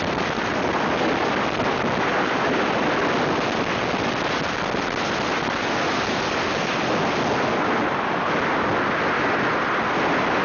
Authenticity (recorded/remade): recorded